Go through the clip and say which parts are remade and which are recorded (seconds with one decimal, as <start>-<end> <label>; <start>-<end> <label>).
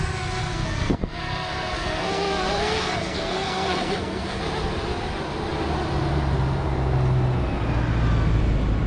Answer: 0.0-0.4 recorded; 0.4-4.4 remade; 4.4-8.9 recorded